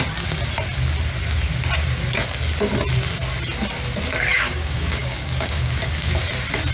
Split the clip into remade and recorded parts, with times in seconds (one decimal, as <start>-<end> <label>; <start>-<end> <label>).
0.0-4.3 recorded; 4.3-6.1 remade; 6.1-6.7 recorded